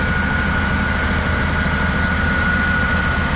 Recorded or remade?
recorded